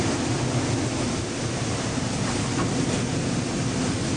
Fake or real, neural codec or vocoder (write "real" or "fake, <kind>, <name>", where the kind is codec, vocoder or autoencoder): fake, vocoder, BigVGAN v2